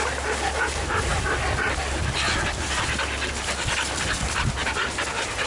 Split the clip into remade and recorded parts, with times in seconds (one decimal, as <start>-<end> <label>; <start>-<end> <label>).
0.0-4.6 recorded; 4.6-5.5 remade